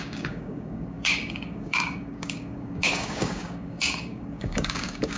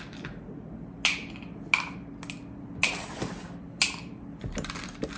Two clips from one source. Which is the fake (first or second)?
first